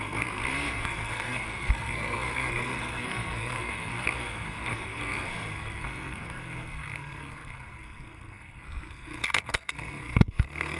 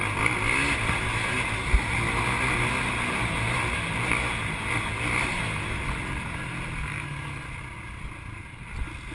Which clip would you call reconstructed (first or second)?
first